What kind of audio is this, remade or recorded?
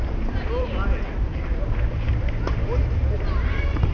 remade